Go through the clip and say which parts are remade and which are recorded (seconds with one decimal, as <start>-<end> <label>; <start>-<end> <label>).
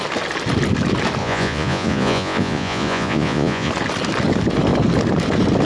0.0-1.2 recorded; 1.2-3.7 remade; 3.7-5.6 recorded